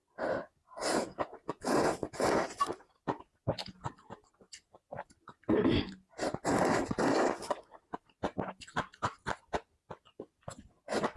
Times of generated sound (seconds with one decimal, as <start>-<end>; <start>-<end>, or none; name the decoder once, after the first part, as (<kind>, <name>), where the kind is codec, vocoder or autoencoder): none